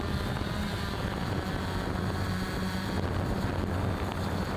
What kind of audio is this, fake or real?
real